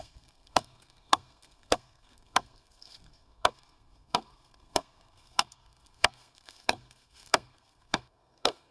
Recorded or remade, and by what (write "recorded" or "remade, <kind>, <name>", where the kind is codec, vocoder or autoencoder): remade, codec, SNAC